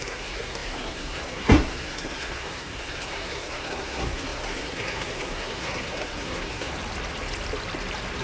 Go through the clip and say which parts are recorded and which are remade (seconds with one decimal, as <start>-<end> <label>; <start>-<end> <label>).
0.0-6.7 remade; 6.7-8.2 recorded